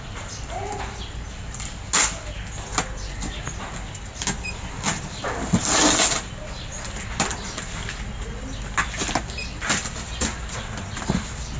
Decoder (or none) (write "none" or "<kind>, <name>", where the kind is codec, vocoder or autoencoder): none